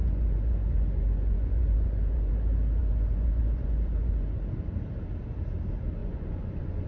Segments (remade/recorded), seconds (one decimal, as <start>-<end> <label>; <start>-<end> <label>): 0.0-2.3 remade; 2.3-2.8 recorded; 2.8-4.4 remade; 4.4-6.0 recorded; 6.0-6.9 remade